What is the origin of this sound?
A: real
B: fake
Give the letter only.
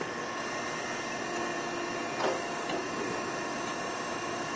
A